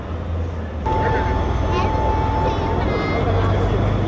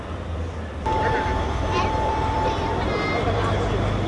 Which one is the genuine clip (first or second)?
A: first